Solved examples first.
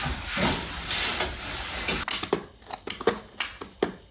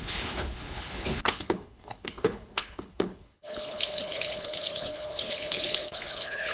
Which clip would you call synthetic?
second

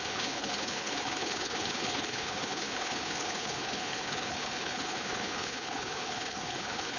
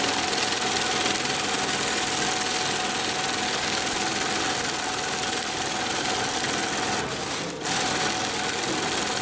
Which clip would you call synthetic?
first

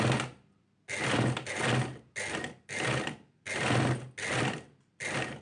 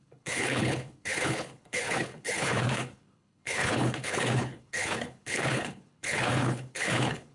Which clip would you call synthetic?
second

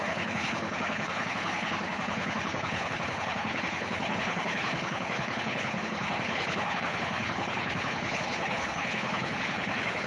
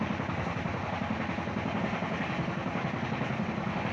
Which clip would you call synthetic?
first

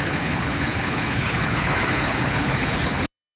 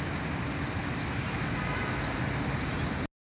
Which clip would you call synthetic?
first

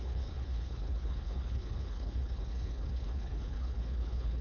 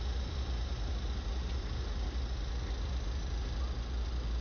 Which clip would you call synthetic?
first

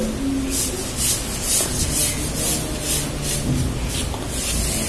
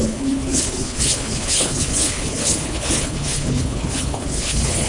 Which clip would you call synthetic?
second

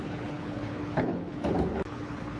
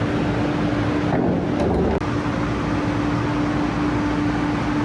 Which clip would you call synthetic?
first